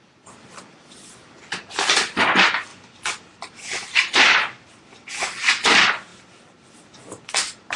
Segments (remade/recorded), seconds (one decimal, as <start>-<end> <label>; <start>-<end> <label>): 0.0-2.7 recorded; 2.7-5.1 remade; 5.1-7.8 recorded